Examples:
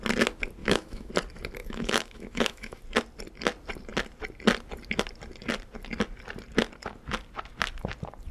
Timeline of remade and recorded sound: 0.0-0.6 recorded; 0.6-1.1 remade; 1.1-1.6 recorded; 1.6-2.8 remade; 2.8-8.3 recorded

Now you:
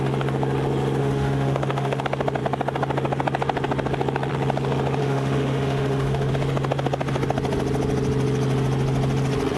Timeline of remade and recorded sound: 0.0-1.0 recorded; 1.0-2.0 remade; 2.0-5.0 recorded; 5.0-6.3 remade; 6.3-9.6 recorded

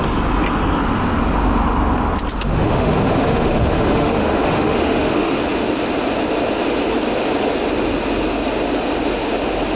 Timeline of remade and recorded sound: 0.0-2.3 recorded; 2.3-5.4 remade; 5.4-9.8 recorded

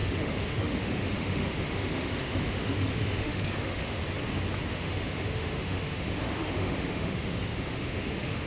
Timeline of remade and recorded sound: 0.0-4.0 remade; 4.0-4.7 recorded; 4.7-8.5 remade

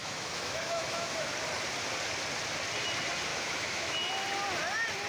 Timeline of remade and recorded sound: 0.0-1.3 remade; 1.3-3.3 recorded; 3.3-4.1 remade; 4.1-5.1 recorded

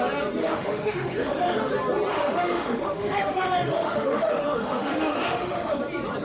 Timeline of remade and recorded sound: 0.0-0.4 recorded; 0.4-1.7 remade; 1.7-2.1 recorded; 2.1-5.8 remade; 5.8-6.2 recorded

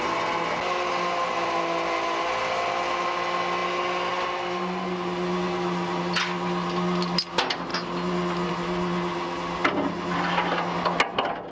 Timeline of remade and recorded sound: 0.0-11.5 recorded

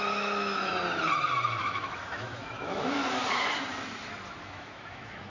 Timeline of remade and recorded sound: 0.0-0.7 remade; 0.7-1.6 recorded; 1.6-3.0 remade; 3.0-4.4 recorded; 4.4-5.3 remade